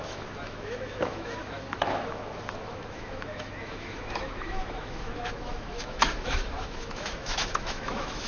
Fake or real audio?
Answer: fake